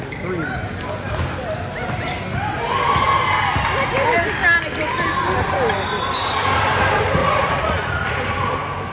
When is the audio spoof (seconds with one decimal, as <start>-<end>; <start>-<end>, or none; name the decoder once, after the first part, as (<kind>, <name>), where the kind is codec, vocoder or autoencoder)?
7.2-8.1 (vocoder, Vocos)